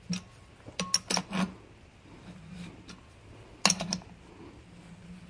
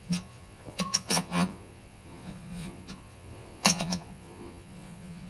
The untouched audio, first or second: first